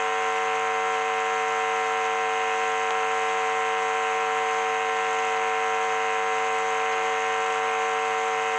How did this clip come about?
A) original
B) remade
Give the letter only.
A